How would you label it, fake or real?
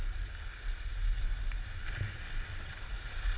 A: real